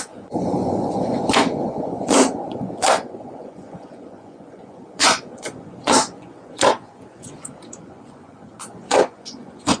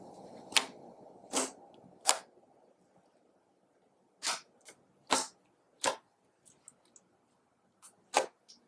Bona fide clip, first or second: second